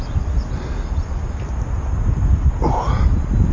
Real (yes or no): yes